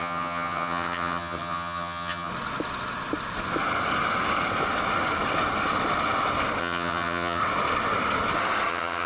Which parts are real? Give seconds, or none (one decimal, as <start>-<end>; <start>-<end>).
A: 2.3-6.6; 7.4-8.7